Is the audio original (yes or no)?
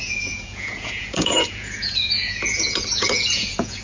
no